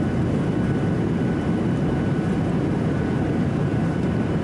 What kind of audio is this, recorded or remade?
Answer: recorded